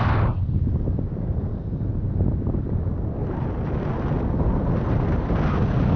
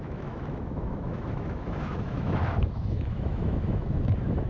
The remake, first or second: second